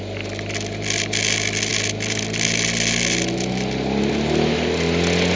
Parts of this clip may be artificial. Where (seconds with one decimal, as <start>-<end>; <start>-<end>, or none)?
none